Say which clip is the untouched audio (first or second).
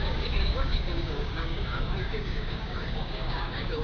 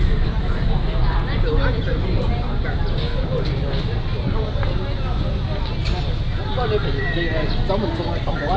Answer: second